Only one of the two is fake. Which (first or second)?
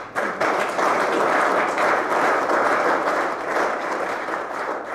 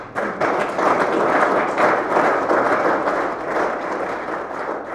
first